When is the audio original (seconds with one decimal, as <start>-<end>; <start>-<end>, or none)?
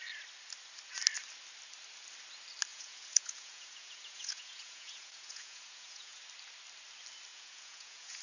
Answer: 0.0-2.7; 6.2-7.3